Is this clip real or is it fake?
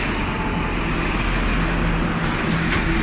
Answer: real